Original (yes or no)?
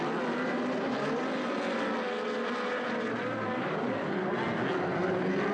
yes